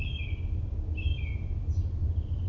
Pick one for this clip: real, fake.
real